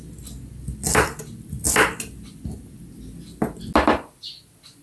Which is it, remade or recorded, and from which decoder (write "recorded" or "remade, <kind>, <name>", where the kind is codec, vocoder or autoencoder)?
recorded